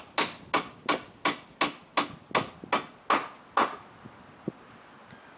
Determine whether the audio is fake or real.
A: real